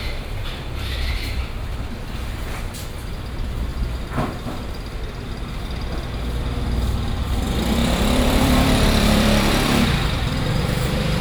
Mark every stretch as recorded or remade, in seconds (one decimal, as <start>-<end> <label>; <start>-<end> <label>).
0.0-3.7 remade; 3.7-7.1 recorded; 7.1-11.2 remade

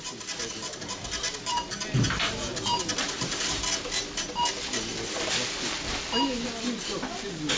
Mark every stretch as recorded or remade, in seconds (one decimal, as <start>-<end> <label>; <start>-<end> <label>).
0.0-7.6 recorded

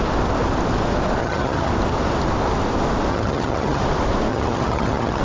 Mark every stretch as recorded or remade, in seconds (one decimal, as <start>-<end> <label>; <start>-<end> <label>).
0.0-1.2 recorded; 1.2-1.7 remade; 1.7-3.1 recorded; 3.1-3.8 remade; 3.8-4.3 recorded; 4.3-5.2 remade

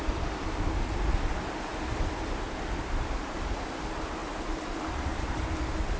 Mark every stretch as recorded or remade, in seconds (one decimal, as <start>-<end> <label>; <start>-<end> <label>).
0.0-1.7 recorded; 1.7-3.6 remade; 3.6-4.2 recorded; 4.2-5.4 remade; 5.4-6.0 recorded

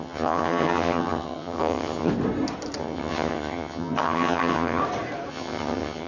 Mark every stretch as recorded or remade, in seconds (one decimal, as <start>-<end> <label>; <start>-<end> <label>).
0.0-2.1 remade; 2.1-2.8 recorded; 2.8-4.8 remade; 4.8-5.3 recorded; 5.3-6.1 remade

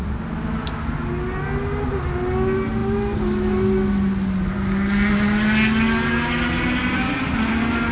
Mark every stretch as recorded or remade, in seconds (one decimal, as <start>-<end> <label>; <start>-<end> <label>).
0.0-7.9 recorded

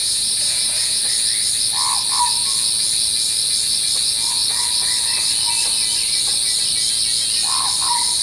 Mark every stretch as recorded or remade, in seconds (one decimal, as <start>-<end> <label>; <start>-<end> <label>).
0.0-1.0 remade; 1.0-8.2 recorded

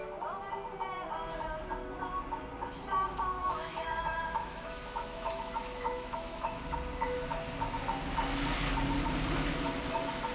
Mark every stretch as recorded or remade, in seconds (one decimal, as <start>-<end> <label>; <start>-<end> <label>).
0.0-3.4 recorded; 3.4-6.6 remade; 6.6-10.3 recorded